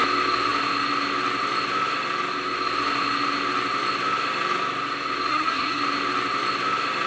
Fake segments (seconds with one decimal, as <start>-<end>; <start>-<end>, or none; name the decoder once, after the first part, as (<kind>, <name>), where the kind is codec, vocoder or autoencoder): 5.3-5.8 (codec, SNAC)